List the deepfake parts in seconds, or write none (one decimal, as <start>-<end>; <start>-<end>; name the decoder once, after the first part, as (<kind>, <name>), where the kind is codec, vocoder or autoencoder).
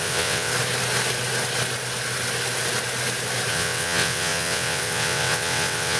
0.0-0.5 (vocoder, WaveNeXt); 3.5-6.0